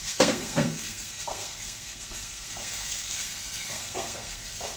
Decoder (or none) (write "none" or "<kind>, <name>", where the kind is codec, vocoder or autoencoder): codec, SNAC